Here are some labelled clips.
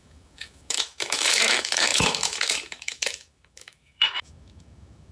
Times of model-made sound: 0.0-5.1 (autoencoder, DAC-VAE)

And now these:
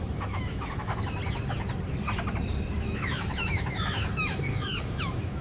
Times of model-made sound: 0.0-1.2 (autoencoder, DAC-VAE); 2.7-5.4

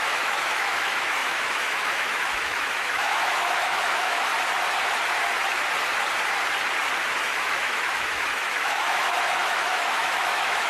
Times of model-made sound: 0.0-4.3 (autoencoder, DAC-VAE); 7.2-10.7

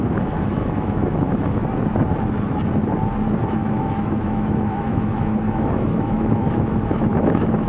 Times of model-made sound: 0.0-1.6 (autoencoder, DAC-VAE); 3.4-7.7